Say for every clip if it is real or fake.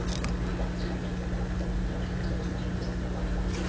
real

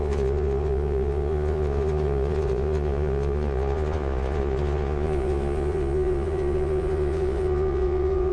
fake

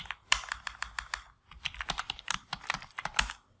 real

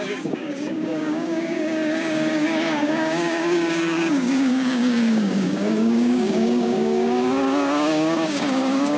fake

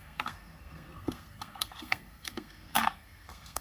fake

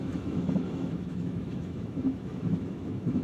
fake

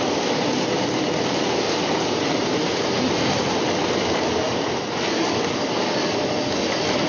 real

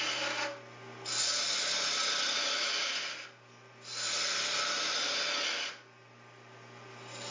real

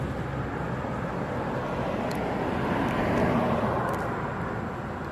real